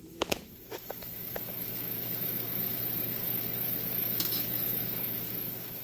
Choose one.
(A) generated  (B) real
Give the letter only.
A